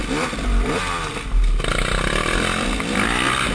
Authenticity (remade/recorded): recorded